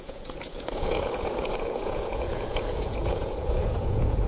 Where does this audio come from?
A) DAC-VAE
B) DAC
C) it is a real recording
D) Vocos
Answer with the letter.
D